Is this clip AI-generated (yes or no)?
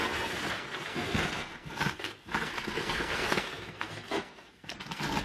yes